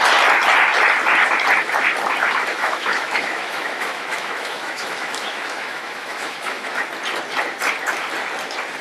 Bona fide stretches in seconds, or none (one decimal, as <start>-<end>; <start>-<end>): 0.0-2.5; 6.8-8.8